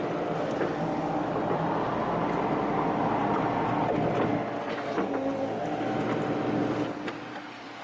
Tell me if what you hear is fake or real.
real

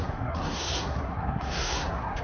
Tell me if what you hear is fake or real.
fake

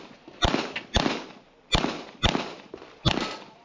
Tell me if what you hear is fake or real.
real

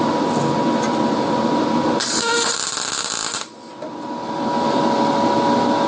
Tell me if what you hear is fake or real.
real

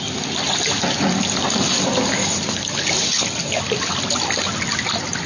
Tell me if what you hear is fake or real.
real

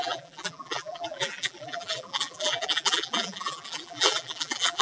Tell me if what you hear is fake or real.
fake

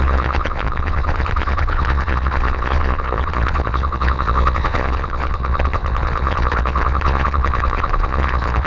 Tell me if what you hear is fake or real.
fake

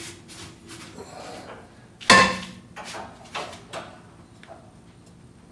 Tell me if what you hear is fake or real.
real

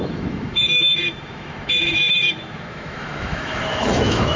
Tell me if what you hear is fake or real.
fake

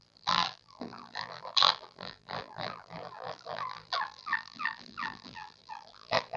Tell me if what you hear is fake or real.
fake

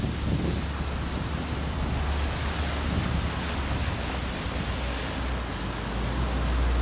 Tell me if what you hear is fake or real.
real